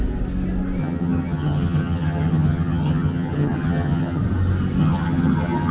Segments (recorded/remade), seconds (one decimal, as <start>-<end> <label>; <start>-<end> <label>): 0.0-0.8 recorded; 0.8-4.2 remade; 4.2-4.8 recorded; 4.8-5.7 remade